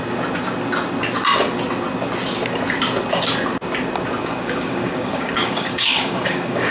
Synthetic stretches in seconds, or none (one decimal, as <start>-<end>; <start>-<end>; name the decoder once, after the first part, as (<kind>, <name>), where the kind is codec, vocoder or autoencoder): 4.2-6.7 (codec, DAC)